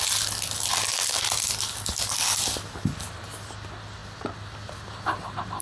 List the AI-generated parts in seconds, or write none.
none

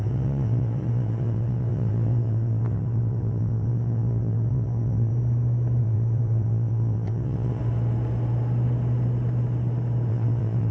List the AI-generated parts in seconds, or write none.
0.0-5.1 (vocoder, WaveNeXt); 5.8-7.6; 10.1-10.7